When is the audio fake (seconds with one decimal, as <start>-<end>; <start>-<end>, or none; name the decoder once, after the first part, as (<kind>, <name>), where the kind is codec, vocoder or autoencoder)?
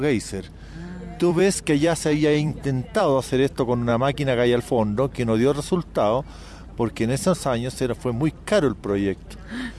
1.2-3.0 (vocoder, BigVGAN v2); 3.9-4.6; 6.6-9.3